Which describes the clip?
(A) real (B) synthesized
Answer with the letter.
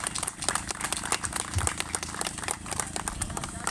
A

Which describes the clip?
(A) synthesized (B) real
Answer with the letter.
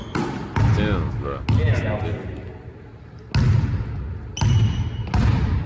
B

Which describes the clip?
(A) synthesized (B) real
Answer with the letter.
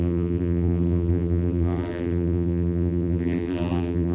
A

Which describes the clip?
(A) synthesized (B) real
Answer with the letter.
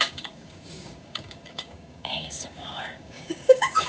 A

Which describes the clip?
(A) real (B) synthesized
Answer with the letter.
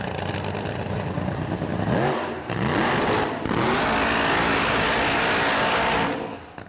A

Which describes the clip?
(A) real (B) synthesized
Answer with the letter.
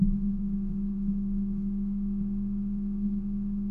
B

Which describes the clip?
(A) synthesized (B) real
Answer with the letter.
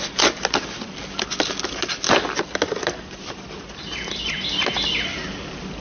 B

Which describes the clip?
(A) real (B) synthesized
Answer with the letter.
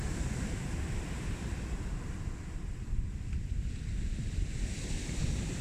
A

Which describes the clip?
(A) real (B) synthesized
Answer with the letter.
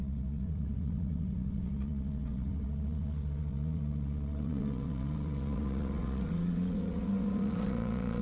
B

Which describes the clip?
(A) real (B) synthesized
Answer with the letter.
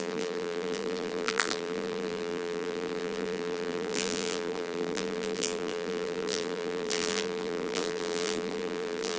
B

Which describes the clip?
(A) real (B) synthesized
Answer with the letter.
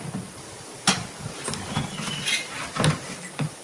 A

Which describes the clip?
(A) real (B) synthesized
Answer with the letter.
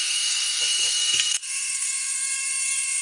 B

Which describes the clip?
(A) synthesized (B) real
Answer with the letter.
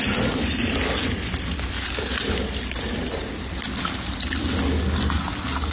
B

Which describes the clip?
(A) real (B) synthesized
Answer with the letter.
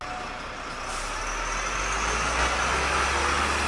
A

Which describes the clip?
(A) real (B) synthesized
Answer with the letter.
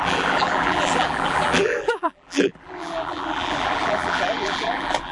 B